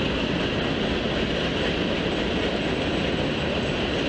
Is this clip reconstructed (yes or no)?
no